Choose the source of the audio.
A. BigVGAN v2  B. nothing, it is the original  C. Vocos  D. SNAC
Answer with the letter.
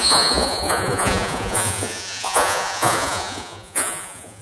C